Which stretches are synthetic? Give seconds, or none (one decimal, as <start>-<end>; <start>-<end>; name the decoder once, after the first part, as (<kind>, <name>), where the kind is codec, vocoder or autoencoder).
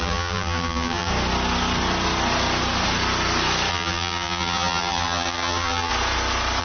0.0-1.1 (vocoder, BigVGAN v2); 3.7-5.9